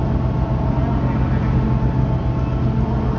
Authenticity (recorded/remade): recorded